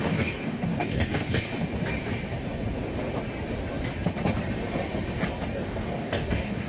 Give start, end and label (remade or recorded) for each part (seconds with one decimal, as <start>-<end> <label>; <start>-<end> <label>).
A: 0.0-1.5 remade; 1.5-5.5 recorded; 5.5-6.7 remade